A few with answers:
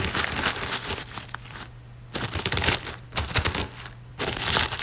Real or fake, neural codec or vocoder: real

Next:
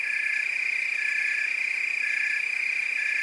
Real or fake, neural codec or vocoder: real